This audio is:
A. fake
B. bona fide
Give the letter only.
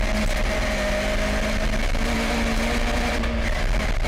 B